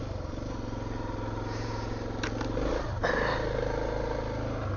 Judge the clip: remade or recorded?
recorded